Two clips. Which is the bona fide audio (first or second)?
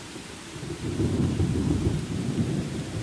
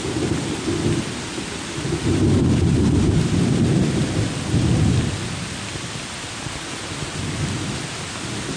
second